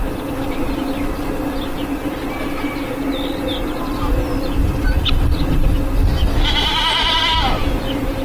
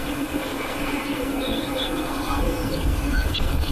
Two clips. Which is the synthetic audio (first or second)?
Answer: second